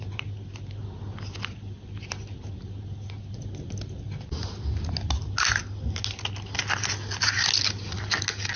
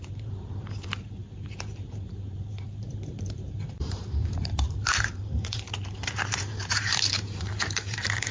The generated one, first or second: second